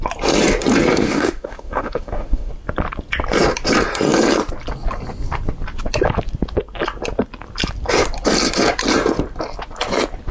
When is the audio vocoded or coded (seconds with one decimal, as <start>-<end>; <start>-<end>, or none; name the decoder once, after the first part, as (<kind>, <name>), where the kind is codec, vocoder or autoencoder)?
0.9-2.5 (autoencoder, DAC-VAE)